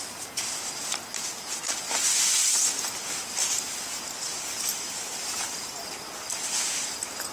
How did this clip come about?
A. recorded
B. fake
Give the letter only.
A